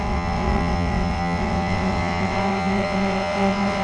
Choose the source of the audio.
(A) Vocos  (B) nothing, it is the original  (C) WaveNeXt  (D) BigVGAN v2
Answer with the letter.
C